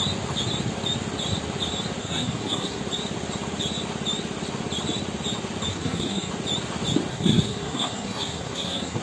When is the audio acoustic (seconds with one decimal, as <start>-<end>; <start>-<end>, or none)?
0.0-2.0; 2.8-5.7; 6.3-7.1